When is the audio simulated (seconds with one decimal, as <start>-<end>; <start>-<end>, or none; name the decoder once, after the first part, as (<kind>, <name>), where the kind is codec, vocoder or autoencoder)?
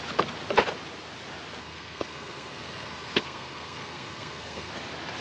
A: 1.6-4.7 (codec, SNAC)